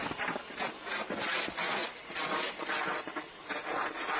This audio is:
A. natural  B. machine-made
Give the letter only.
A